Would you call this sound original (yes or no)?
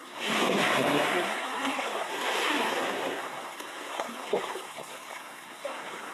no